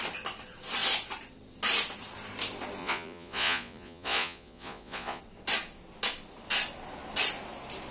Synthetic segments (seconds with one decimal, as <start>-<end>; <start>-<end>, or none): 2.8-5.2